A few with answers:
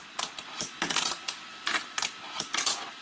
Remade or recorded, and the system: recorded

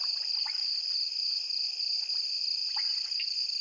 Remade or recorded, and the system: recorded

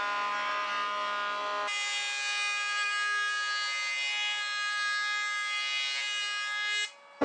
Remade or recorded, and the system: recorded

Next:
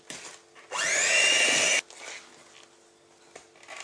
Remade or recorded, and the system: recorded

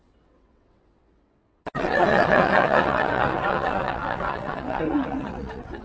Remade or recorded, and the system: remade, vocoder, WaveNeXt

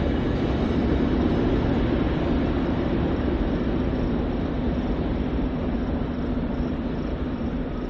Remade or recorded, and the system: recorded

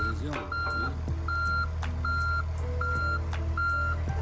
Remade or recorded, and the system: recorded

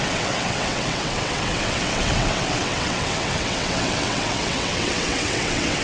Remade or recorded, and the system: remade, vocoder, WaveNeXt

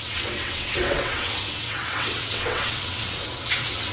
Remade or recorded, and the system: remade, vocoder, WaveNeXt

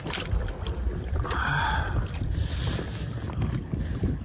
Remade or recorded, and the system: recorded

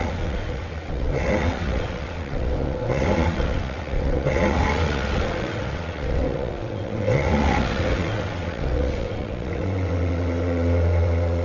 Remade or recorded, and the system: remade, vocoder, WaveNeXt